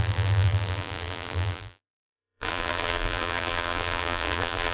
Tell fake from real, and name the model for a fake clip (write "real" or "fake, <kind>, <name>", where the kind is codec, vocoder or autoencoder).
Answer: fake, vocoder, BigVGAN v2